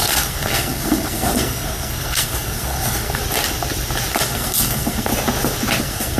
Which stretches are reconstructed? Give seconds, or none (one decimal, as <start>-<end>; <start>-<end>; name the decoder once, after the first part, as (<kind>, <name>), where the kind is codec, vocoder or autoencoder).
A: 0.0-3.2 (codec, SNAC); 4.2-5.1; 5.8-6.2